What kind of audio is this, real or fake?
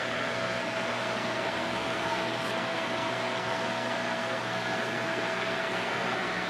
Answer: fake